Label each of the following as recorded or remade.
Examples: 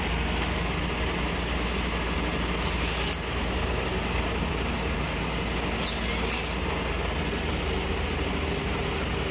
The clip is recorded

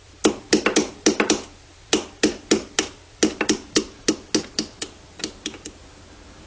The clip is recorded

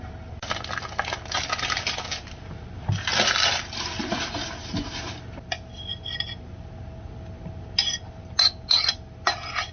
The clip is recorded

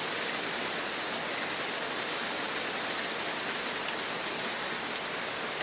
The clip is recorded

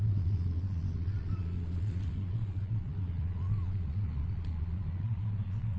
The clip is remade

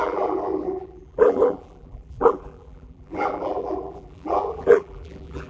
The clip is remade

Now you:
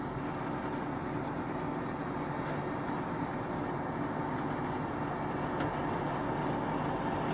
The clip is recorded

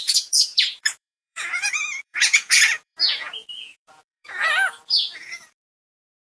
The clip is remade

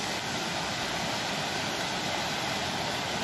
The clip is recorded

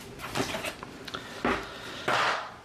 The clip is recorded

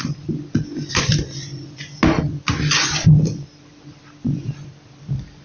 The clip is recorded